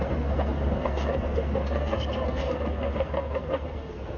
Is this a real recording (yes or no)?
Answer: no